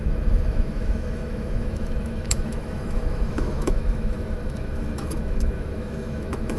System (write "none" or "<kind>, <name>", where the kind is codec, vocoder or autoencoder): autoencoder, DAC-VAE